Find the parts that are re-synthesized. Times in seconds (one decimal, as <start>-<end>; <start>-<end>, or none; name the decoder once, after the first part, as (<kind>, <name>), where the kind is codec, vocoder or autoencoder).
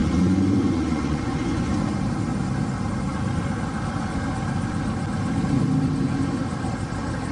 0.0-1.7 (vocoder, Vocos)